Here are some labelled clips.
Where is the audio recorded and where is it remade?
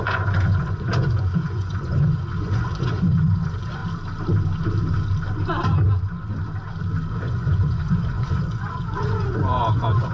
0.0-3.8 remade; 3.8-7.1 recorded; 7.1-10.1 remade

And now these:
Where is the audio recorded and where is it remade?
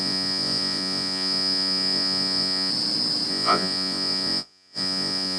0.0-2.7 remade; 2.7-3.3 recorded; 3.3-5.4 remade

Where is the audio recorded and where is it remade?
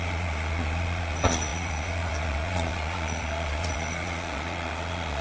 0.0-5.2 remade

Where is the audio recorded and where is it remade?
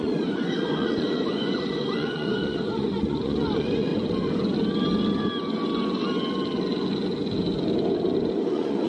0.0-3.9 remade; 3.9-8.5 recorded; 8.5-8.9 remade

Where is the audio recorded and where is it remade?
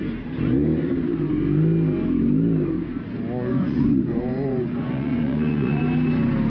0.0-3.5 recorded; 3.5-5.8 remade; 5.8-6.5 recorded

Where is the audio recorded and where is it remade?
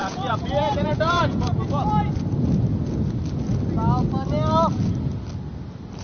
0.0-1.9 remade; 1.9-6.0 recorded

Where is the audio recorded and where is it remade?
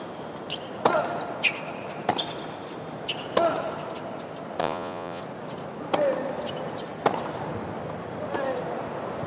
0.0-4.6 recorded; 4.6-5.2 remade; 5.2-9.3 recorded